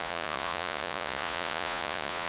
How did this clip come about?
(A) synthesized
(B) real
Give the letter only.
A